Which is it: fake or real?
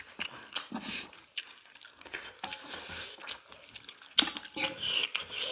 real